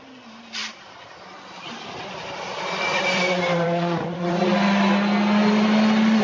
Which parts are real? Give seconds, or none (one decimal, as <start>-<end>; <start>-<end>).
0.0-0.6; 4.3-6.2